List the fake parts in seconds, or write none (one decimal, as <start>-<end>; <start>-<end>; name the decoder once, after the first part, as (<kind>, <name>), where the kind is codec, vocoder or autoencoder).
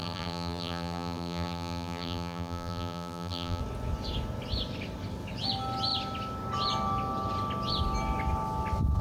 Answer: 0.0-3.6 (vocoder, BigVGAN v2)